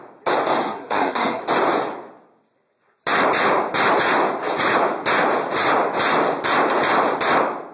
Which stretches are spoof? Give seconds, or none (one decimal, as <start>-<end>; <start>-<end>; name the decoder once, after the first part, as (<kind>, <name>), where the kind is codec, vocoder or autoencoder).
0.6-1.4 (codec, SNAC)